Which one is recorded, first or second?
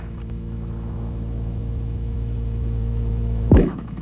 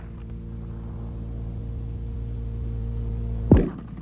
second